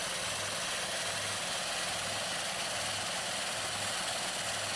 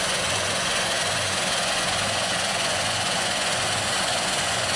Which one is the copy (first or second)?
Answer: second